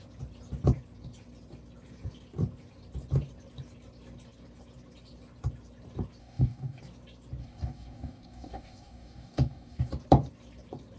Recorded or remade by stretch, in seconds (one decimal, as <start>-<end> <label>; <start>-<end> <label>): 0.0-6.2 recorded; 6.2-6.8 remade; 6.8-7.4 recorded; 7.4-9.9 remade; 9.9-11.0 recorded